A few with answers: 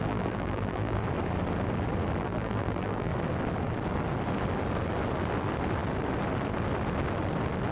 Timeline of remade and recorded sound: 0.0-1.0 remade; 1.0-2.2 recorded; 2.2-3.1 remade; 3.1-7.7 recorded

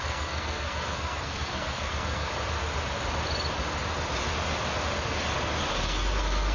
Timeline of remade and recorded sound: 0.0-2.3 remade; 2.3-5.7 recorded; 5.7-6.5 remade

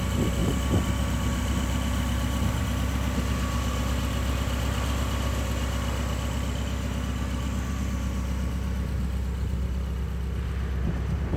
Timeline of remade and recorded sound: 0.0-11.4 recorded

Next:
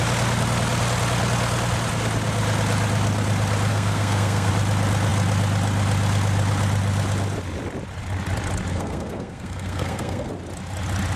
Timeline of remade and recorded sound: 0.0-3.7 recorded; 3.7-4.5 remade; 4.5-8.7 recorded; 8.7-10.3 remade; 10.3-11.2 recorded